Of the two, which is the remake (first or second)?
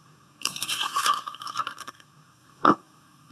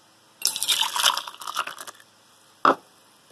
first